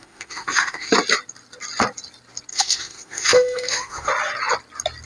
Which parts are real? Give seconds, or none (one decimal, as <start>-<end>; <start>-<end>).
0.9-2.5; 4.1-5.1